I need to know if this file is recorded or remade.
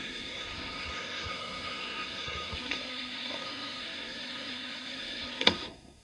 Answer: remade